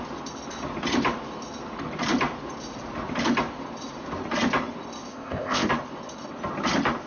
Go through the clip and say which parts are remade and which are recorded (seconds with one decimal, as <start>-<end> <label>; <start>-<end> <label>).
0.0-5.1 recorded; 5.1-5.7 remade; 5.7-7.1 recorded